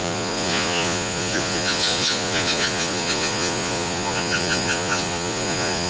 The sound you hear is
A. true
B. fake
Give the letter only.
B